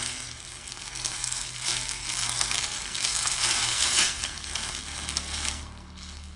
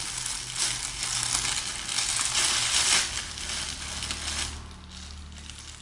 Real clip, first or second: second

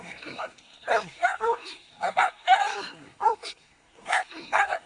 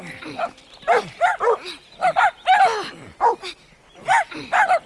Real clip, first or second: second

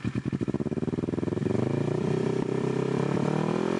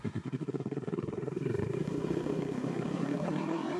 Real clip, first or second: first